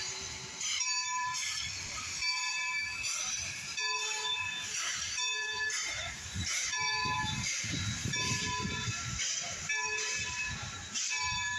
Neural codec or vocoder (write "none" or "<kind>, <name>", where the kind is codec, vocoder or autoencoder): vocoder, BigVGAN v2